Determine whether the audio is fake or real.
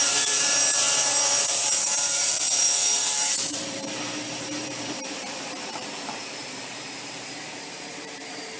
fake